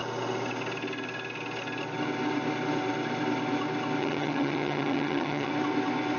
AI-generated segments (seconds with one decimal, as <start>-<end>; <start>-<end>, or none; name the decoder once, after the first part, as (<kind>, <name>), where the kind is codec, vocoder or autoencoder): 4.0-5.5 (vocoder, HiFi-GAN)

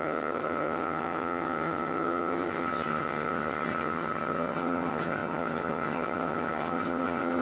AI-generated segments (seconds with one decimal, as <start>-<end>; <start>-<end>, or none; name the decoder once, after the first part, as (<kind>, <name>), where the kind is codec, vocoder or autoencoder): 0.0-7.4 (vocoder, HiFi-GAN)

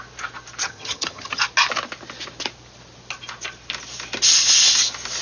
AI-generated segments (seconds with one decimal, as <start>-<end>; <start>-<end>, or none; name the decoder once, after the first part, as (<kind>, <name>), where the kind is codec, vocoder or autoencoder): 0.6-1.4 (vocoder, HiFi-GAN)

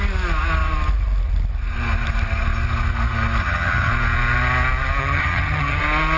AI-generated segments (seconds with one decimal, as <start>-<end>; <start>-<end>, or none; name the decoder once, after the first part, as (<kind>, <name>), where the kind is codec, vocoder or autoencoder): 3.4-3.9 (vocoder, HiFi-GAN); 5.0-5.8

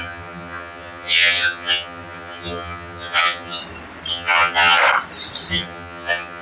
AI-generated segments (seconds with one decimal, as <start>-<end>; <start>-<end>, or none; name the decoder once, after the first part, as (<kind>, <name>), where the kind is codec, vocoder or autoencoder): 0.0-3.6 (vocoder, HiFi-GAN); 4.1-4.8; 5.5-6.4

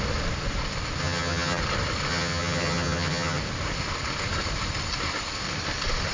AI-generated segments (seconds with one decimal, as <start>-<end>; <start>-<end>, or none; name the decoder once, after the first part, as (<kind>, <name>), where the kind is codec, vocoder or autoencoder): 1.0-1.6 (vocoder, HiFi-GAN); 2.1-3.4

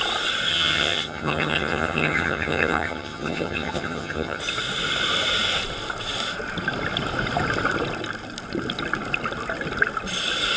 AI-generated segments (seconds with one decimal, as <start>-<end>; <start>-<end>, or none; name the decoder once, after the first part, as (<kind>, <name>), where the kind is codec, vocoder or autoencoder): 0.5-4.4 (vocoder, HiFi-GAN)